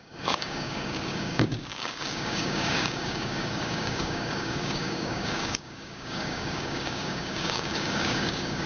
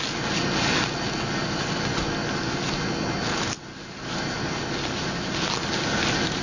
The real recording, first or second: second